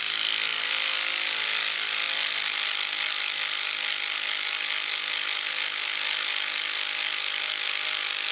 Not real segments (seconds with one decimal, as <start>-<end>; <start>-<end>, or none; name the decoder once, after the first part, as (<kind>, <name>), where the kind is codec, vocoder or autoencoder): none